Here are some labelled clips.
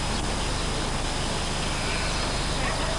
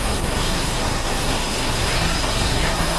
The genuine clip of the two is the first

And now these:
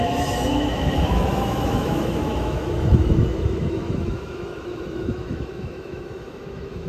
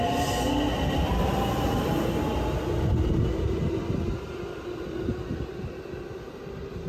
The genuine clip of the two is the second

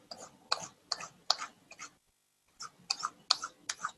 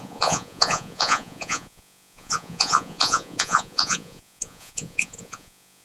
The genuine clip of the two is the first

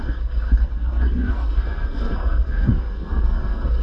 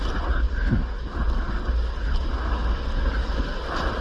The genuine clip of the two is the second